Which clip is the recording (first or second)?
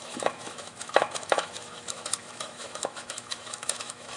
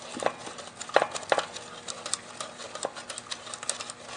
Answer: second